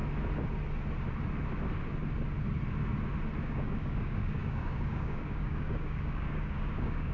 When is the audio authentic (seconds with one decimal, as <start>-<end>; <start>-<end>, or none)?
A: 0.0-3.4